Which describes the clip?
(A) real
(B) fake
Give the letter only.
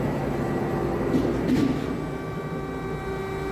A